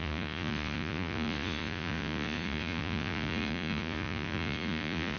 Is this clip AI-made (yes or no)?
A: yes